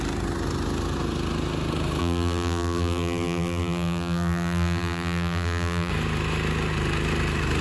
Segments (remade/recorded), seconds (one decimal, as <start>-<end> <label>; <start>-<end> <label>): 0.0-2.0 recorded; 2.0-5.9 remade; 5.9-7.6 recorded